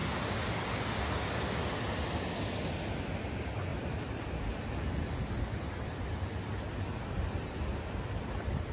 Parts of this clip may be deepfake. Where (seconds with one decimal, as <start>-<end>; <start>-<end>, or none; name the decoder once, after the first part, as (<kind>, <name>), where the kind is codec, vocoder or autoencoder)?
none